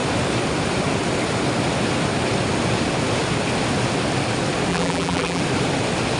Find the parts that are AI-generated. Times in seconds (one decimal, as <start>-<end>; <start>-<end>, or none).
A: 4.7-5.4